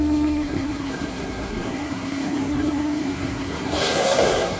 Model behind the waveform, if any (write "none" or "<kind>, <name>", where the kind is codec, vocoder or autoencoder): codec, SNAC